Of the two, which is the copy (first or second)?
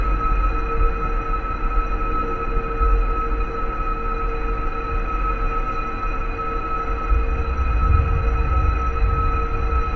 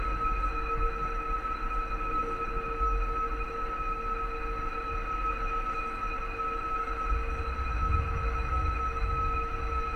second